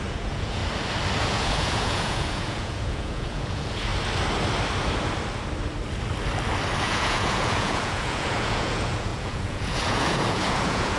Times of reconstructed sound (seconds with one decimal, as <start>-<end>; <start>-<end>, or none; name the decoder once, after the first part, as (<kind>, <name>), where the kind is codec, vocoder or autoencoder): 0.0-0.6 (vocoder, Vocos); 1.3-3.9; 6.8-11.0